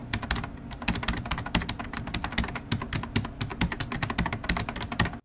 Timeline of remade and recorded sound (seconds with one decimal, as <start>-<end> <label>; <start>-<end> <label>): 0.0-5.2 recorded